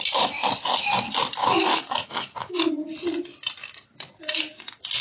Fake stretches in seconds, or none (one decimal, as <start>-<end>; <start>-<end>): 1.4-2.6